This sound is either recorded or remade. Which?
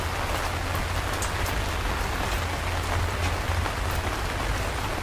recorded